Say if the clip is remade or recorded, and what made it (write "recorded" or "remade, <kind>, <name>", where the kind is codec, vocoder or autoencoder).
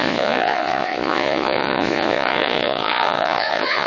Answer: remade, vocoder, Vocos